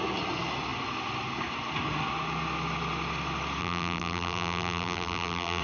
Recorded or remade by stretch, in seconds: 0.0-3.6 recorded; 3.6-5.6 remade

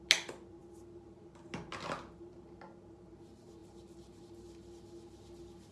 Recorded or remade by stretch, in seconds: 0.0-5.7 recorded